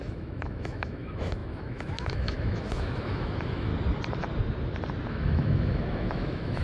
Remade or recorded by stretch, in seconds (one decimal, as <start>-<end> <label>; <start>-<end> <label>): 0.0-3.7 remade; 3.7-5.1 recorded; 5.1-6.6 remade